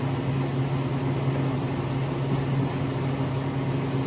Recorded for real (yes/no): yes